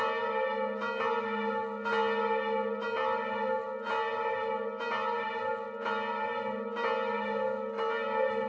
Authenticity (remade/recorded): recorded